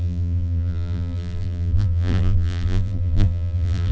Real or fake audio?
fake